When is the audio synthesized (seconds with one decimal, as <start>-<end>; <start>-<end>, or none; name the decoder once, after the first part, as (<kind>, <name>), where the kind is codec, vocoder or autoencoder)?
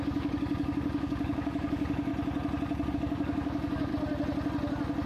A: 0.0-2.1 (codec, DAC); 2.9-3.9